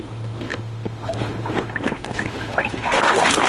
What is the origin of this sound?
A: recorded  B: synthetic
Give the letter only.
B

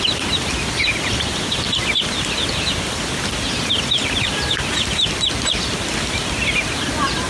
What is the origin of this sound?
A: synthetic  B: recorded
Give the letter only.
B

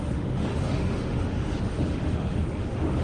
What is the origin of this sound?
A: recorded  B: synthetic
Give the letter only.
B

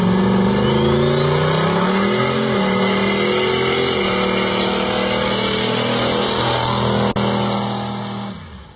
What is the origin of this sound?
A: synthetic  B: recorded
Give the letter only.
B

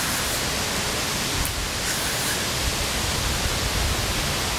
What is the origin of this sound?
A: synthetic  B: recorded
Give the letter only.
B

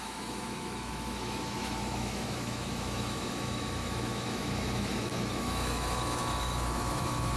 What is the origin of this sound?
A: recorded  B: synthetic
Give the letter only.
B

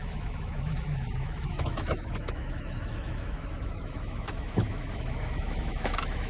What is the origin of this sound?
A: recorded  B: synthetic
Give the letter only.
B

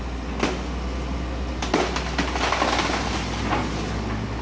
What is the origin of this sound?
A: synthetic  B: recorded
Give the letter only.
B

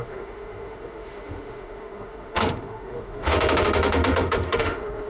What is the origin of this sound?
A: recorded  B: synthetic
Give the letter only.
B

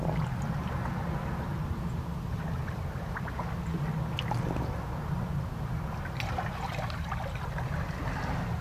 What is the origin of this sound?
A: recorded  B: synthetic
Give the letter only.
A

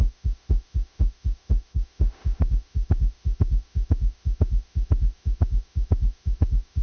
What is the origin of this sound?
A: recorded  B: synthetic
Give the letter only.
B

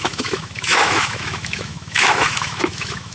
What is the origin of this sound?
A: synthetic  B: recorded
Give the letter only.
A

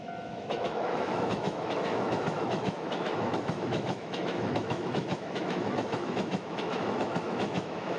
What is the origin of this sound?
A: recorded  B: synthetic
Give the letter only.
B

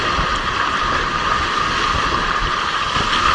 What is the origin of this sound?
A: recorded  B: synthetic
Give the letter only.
A